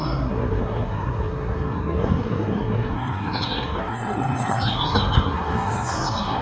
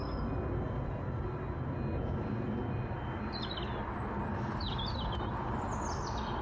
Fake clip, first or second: first